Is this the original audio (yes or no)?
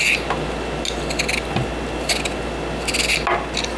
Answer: yes